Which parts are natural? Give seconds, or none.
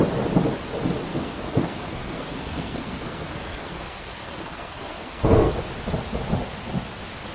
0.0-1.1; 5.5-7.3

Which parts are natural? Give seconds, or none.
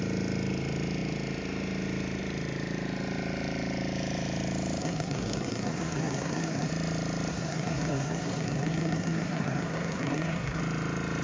0.0-4.8; 6.7-7.3; 10.6-11.2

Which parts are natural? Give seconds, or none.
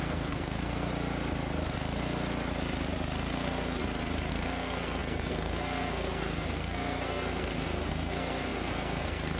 0.9-3.3; 3.8-4.3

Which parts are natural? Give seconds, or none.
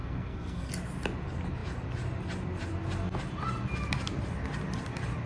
0.7-5.3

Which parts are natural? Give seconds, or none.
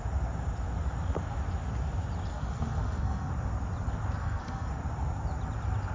0.0-2.3; 3.3-4.2; 4.7-5.9